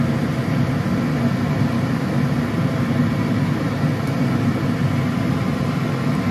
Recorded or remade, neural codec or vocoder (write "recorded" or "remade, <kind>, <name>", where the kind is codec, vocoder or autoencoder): recorded